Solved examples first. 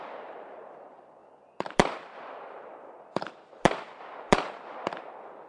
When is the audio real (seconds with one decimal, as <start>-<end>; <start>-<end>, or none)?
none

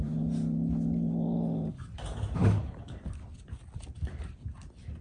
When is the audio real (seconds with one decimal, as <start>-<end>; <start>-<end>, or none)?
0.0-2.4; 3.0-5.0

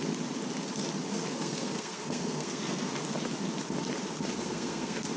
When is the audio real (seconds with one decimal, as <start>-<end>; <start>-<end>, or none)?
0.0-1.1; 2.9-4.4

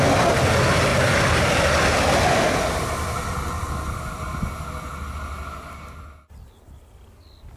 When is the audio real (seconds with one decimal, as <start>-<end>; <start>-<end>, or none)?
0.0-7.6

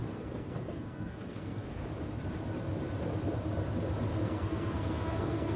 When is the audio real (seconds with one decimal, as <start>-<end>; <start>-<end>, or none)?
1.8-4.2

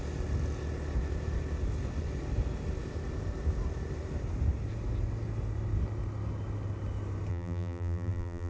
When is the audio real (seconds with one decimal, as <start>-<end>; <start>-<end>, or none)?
0.0-7.3

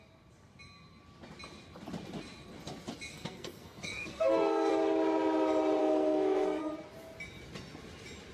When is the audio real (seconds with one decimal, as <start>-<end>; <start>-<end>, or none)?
0.0-3.1; 4.7-5.8; 6.6-8.3